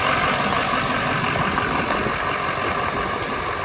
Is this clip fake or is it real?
real